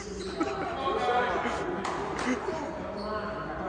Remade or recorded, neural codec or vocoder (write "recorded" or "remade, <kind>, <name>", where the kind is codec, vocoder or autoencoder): recorded